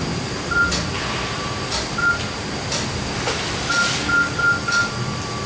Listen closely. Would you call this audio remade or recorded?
recorded